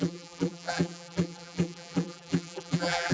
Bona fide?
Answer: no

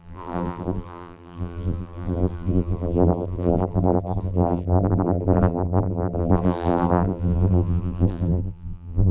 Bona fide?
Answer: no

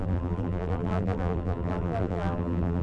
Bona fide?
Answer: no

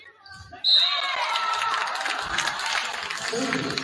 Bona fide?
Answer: yes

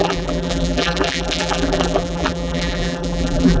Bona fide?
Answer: no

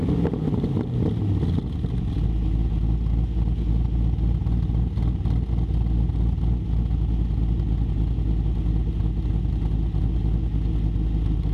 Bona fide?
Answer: yes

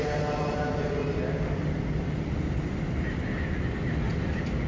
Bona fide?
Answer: yes